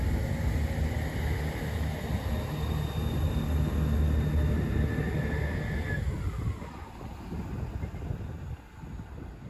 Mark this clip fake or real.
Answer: real